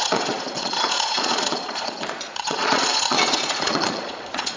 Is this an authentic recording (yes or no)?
no